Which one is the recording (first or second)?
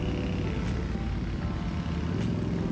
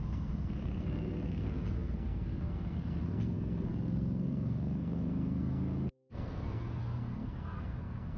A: first